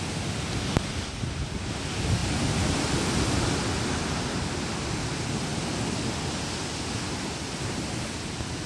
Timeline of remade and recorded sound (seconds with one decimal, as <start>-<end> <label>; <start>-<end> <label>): 0.0-2.2 recorded; 2.2-4.3 remade; 4.3-5.5 recorded; 5.5-6.5 remade; 6.5-8.7 recorded